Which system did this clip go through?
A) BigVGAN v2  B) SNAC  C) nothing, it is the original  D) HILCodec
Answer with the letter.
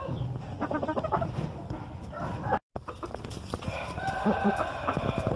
C